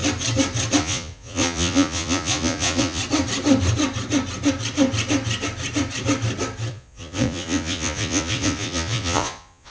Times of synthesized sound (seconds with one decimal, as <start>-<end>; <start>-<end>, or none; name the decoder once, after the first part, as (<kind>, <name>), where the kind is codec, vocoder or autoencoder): 0.8-3.0 (vocoder, Vocos); 6.7-9.7